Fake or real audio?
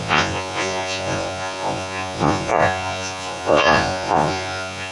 fake